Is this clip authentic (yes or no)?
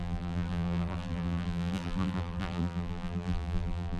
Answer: no